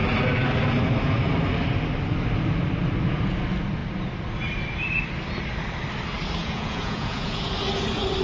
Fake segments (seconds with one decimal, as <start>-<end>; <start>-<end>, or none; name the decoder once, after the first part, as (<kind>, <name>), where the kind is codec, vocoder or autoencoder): 6.4-7.5 (vocoder, Vocos)